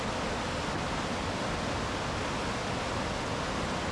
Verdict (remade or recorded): recorded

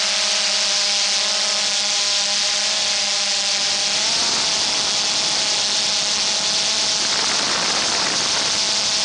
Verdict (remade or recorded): recorded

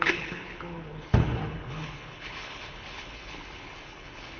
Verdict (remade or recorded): remade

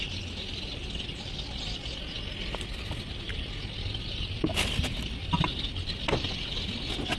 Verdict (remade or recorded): recorded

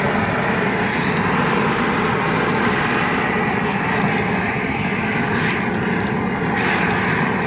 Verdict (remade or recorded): recorded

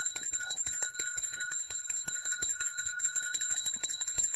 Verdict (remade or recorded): remade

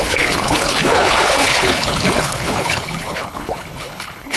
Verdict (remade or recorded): remade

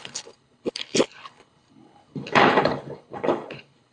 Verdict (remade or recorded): remade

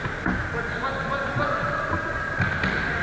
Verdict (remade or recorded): recorded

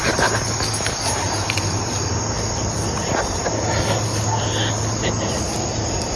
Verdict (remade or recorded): recorded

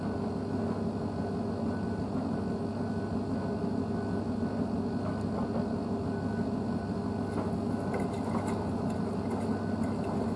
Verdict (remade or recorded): recorded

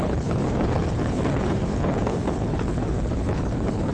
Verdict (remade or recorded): remade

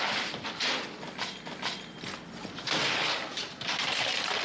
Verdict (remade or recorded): recorded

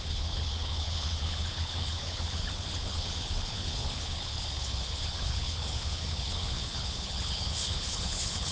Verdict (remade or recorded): remade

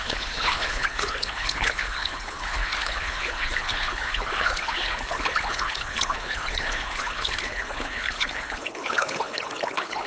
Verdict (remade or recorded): remade